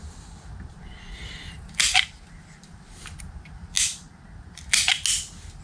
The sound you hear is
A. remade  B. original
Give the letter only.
B